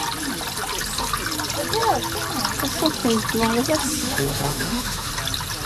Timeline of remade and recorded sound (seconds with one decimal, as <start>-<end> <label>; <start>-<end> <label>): 0.0-4.0 recorded; 4.0-5.1 remade; 5.1-5.7 recorded